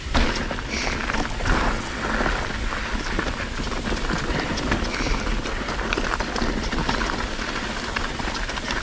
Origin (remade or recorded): recorded